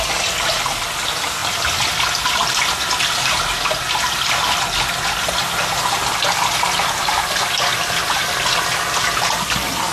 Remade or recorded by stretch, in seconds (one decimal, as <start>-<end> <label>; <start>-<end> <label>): 0.0-9.9 recorded